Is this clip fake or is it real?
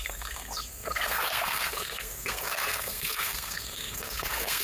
fake